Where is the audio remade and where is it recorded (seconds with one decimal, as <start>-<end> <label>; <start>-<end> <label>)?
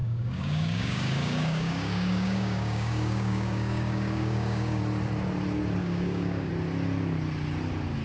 0.0-4.8 remade; 4.8-5.8 recorded; 5.8-6.5 remade; 6.5-8.0 recorded